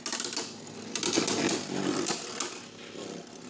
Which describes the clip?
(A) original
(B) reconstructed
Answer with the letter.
A